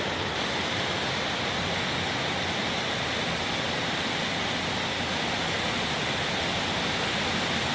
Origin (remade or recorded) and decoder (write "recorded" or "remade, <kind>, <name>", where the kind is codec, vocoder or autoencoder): recorded